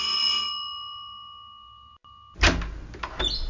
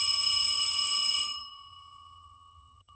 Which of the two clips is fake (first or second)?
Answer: second